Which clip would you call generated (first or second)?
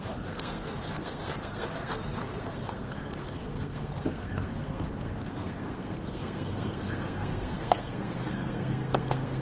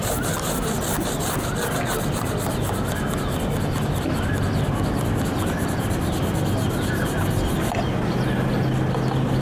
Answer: first